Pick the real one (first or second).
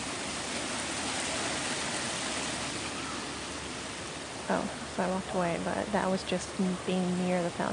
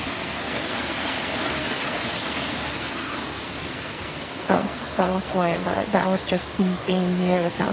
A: first